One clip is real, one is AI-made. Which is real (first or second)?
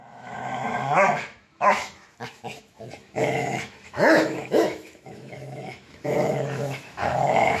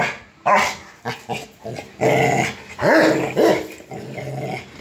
second